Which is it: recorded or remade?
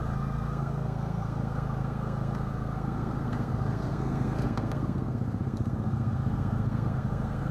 remade